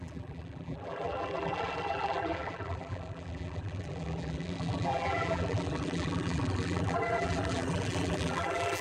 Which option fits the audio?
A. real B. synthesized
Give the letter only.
B